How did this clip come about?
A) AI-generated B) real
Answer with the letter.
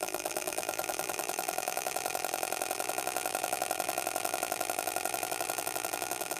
A